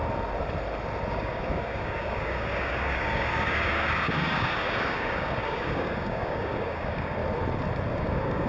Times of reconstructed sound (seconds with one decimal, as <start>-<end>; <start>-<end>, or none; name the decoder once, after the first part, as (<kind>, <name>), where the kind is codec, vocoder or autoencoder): 1.1-7.2 (codec, DAC); 7.9-8.5